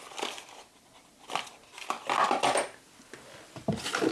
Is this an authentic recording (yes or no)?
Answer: yes